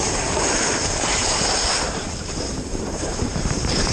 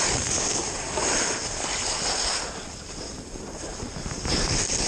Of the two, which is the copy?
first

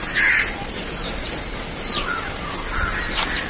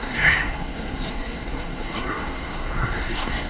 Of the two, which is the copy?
second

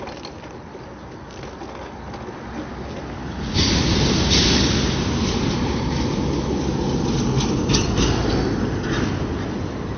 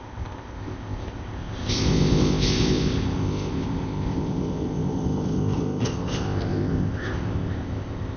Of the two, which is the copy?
second